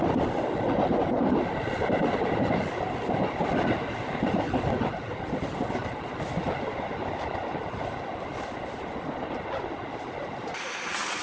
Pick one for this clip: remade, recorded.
recorded